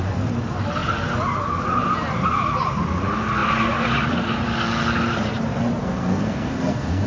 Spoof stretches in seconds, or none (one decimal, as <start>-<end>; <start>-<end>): 5.8-7.1